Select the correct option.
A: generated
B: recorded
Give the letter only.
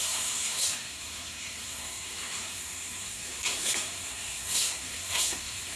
A